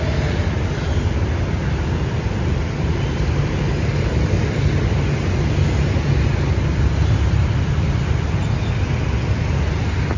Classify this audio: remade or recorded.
recorded